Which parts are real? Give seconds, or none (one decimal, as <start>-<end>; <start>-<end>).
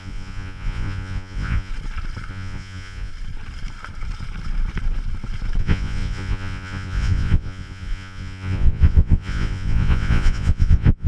1.7-2.3; 3.1-5.6